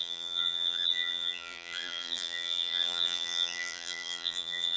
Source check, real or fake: fake